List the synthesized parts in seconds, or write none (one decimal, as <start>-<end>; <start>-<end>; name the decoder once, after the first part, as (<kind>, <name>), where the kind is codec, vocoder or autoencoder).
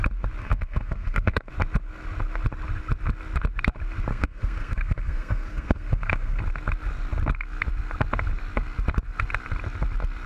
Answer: 0.4-1.5 (codec, SNAC); 4.1-6.4